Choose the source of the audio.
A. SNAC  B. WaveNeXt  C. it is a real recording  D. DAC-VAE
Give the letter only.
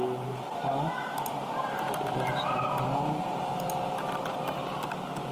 C